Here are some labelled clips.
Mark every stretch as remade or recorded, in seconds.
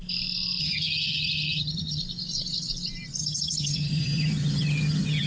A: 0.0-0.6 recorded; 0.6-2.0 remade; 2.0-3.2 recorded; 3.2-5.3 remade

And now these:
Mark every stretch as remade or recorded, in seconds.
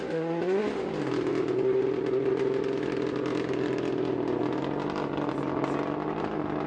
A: 0.0-6.7 recorded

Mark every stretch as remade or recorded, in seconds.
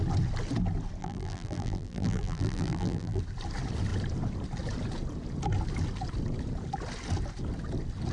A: 0.0-1.0 recorded; 1.0-3.2 remade; 3.2-8.1 recorded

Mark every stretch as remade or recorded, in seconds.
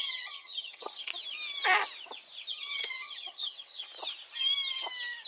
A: 0.0-1.1 remade; 1.1-2.5 recorded; 2.5-3.9 remade; 3.9-5.3 recorded